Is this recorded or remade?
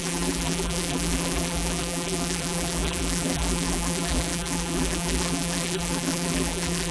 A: remade